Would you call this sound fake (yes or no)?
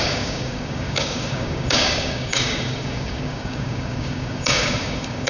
yes